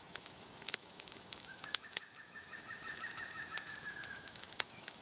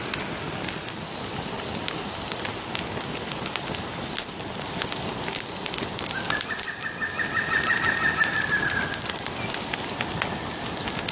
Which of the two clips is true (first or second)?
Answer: second